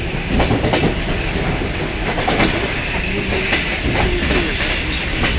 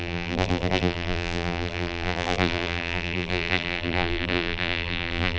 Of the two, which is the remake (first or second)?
second